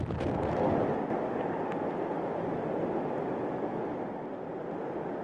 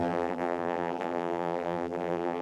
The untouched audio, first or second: first